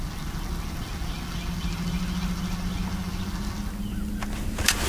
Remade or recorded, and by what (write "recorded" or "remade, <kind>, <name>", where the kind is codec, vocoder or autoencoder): recorded